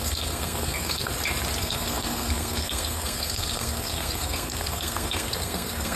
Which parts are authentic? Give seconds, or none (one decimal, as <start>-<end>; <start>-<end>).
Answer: 1.1-1.6